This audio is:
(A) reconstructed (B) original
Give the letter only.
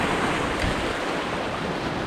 B